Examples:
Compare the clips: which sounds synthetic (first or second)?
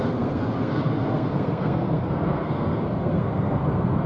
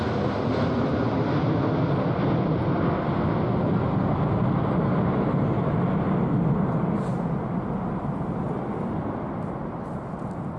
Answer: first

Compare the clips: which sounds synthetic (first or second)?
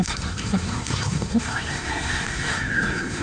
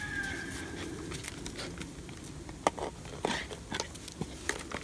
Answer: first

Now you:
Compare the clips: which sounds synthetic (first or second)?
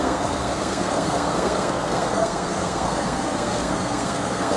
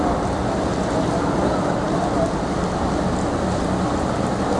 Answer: first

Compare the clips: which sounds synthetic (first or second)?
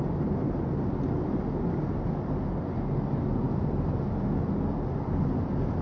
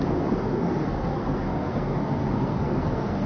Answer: second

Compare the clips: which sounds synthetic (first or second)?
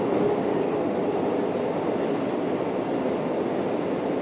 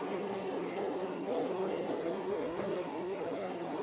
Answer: second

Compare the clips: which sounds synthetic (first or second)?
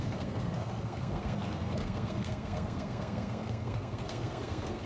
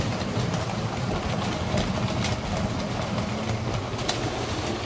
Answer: first